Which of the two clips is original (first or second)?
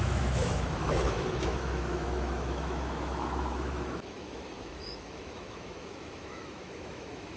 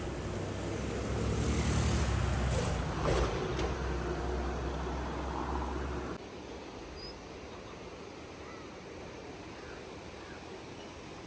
second